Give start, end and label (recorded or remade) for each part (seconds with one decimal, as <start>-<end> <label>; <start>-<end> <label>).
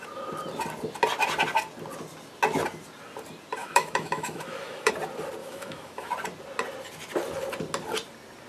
0.0-3.6 recorded; 3.6-4.9 remade; 4.9-5.4 recorded; 5.4-6.1 remade; 6.1-8.5 recorded